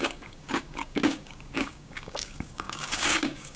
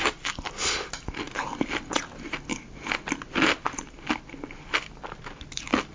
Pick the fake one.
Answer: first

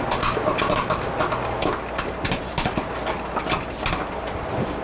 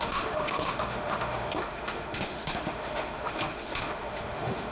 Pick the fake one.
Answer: second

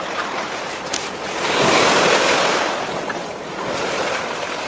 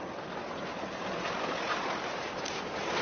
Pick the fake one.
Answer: first